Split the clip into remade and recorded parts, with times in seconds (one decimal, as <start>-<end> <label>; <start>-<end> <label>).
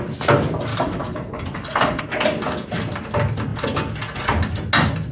0.0-0.7 recorded; 0.7-2.0 remade; 2.0-5.1 recorded